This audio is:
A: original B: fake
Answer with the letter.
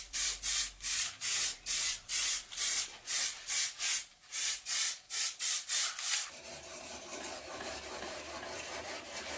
B